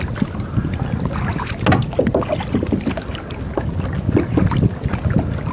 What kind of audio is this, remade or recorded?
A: recorded